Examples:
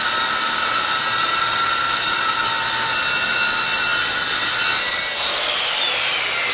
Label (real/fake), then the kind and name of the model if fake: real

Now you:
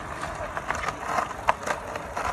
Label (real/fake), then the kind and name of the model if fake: real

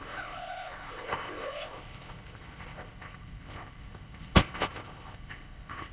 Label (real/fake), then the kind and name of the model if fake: fake, codec, ZipCodec